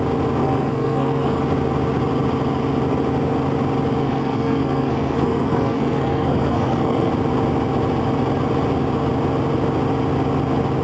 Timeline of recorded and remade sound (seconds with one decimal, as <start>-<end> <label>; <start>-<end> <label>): 0.0-0.4 recorded; 0.4-1.4 remade; 1.4-4.0 recorded; 4.0-7.1 remade; 7.1-10.8 recorded